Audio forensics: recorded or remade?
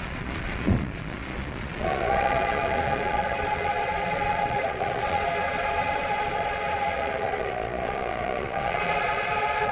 remade